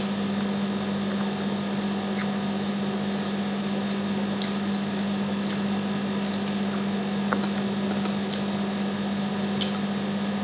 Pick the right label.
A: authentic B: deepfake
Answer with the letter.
A